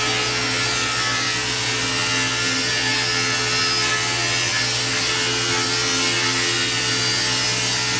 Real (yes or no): yes